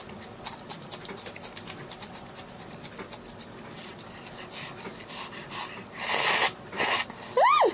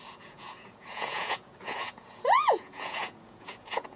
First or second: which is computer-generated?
second